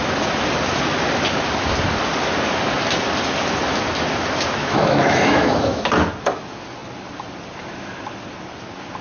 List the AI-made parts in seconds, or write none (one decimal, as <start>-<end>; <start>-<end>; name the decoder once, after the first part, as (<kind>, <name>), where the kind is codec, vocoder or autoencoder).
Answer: 4.6-5.8 (autoencoder, DAC-VAE)

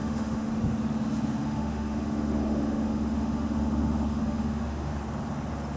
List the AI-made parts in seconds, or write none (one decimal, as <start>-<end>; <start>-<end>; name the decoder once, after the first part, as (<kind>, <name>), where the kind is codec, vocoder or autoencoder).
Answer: 0.0-0.5 (autoencoder, DAC-VAE); 1.4-4.9